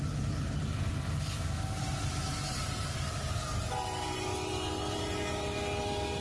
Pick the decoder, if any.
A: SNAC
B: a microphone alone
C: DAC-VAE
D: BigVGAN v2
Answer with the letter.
B